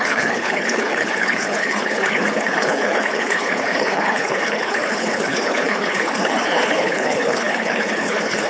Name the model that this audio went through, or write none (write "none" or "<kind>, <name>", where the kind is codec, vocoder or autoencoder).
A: codec, HILCodec